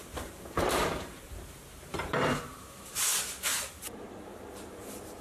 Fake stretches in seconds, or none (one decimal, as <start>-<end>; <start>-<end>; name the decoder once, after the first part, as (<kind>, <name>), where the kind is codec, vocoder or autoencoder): 0.0-5.2 (vocoder, BigVGAN v2)